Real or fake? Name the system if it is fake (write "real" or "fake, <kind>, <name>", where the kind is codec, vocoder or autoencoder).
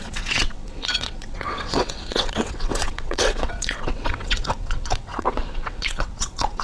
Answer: fake, vocoder, WaveNeXt